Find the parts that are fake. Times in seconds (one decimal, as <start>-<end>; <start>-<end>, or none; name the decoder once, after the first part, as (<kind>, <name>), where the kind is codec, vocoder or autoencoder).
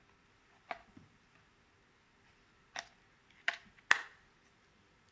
none